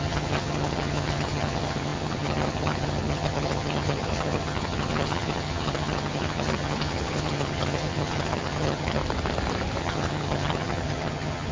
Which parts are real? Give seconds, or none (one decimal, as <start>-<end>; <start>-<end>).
9.0-9.8